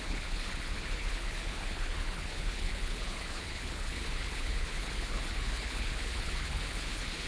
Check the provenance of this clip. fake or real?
fake